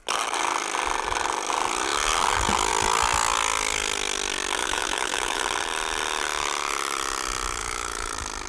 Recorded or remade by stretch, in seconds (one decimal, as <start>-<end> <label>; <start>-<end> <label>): 0.0-4.6 recorded; 4.6-5.4 remade; 5.4-7.6 recorded; 7.6-8.1 remade; 8.1-8.5 recorded